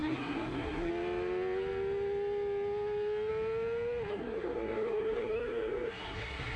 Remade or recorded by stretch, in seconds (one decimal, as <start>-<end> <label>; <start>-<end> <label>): 0.0-0.9 remade; 0.9-4.1 recorded; 4.1-6.6 remade